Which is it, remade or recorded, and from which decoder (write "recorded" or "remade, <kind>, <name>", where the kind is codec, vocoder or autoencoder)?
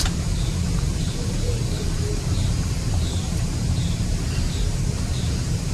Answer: remade, vocoder, BigVGAN v2